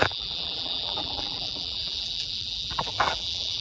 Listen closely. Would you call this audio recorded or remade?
remade